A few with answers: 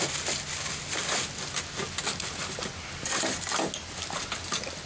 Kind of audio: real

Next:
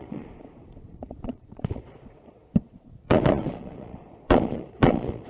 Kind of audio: fake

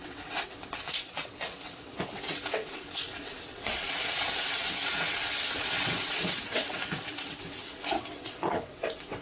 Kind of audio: fake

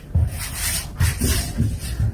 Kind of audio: real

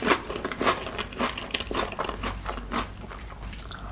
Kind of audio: real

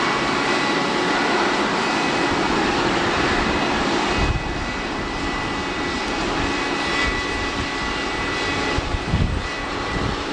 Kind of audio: fake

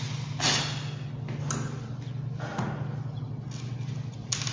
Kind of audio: real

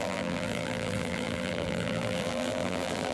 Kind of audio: fake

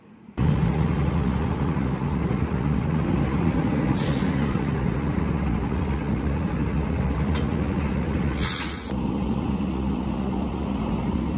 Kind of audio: fake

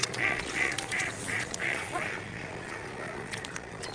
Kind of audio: fake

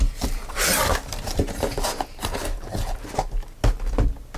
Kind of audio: real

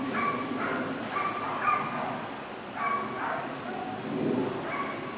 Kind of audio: real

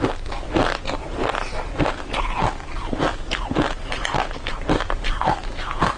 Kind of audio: real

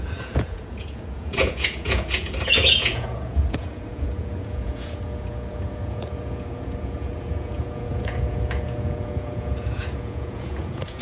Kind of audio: fake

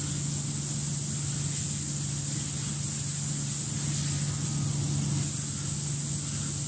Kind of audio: real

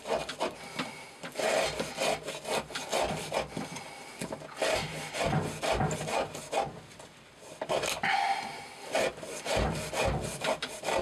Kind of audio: real